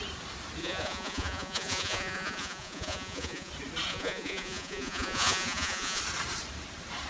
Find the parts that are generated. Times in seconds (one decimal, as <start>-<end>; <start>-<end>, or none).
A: 0.6-3.5; 3.9-6.0